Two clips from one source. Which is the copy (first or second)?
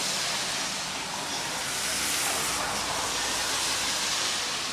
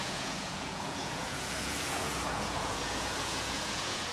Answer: second